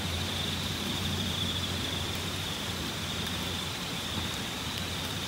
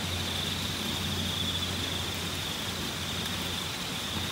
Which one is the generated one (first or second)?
first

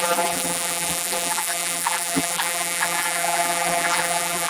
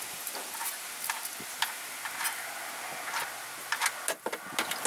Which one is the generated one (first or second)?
first